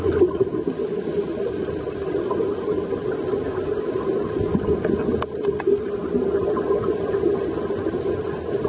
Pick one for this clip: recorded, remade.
recorded